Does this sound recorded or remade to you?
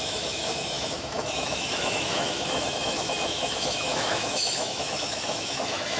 remade